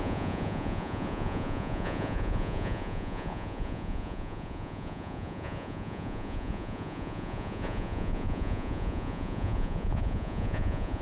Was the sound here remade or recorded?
remade